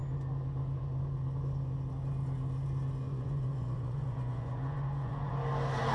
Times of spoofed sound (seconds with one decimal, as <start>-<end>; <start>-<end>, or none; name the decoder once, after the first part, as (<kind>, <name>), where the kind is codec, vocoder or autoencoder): 3.0-5.3 (vocoder, Vocos)